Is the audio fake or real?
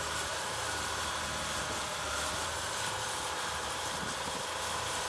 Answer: fake